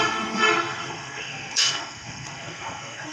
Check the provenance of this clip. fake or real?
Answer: fake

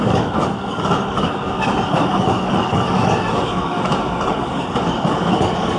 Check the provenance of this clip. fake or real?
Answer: fake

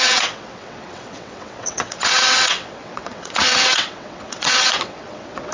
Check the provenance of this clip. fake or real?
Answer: fake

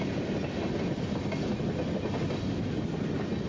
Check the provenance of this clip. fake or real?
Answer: real